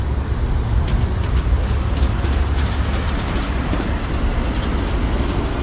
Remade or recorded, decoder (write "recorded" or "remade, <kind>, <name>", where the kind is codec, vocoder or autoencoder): recorded